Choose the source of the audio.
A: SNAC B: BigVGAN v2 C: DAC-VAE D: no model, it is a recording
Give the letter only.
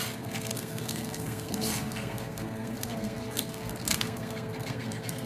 A